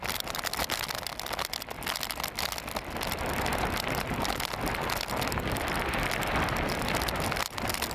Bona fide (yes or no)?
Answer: yes